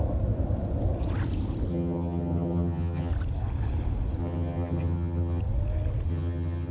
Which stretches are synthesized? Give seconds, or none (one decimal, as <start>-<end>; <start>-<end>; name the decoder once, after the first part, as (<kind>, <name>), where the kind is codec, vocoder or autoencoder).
1.7-3.1 (vocoder, HiFi-GAN); 4.2-5.4; 6.1-6.7